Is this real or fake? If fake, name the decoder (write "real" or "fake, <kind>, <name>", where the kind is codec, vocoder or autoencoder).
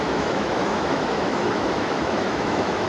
fake, autoencoder, DAC-VAE